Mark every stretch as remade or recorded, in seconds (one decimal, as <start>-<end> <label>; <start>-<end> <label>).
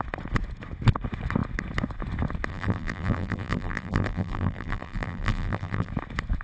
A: 0.0-2.5 recorded; 2.5-5.9 remade; 5.9-6.4 recorded